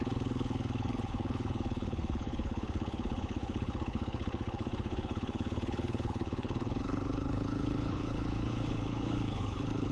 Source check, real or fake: fake